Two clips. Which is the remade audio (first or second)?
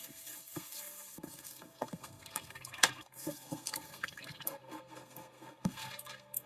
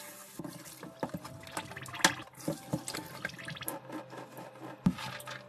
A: first